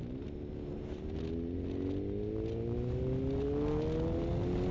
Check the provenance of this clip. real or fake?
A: real